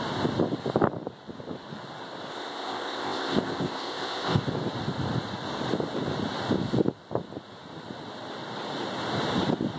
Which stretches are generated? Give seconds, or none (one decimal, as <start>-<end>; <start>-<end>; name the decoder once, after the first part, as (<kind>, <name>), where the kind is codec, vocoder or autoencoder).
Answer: 2.3-4.4 (codec, ZipCodec)